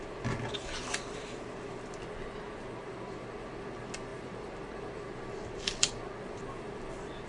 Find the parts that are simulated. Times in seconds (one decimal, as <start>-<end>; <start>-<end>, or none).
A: 4.1-7.3